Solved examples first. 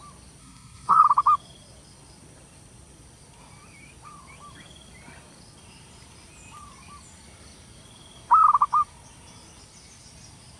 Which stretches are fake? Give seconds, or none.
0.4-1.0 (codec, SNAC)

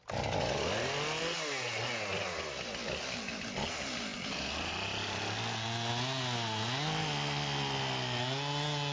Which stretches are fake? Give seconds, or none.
none